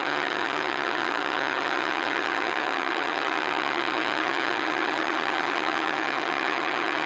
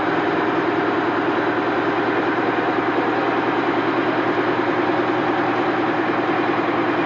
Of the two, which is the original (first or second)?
second